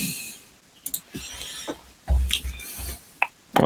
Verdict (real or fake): real